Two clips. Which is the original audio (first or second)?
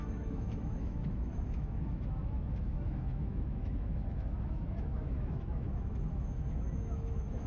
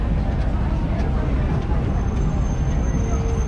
second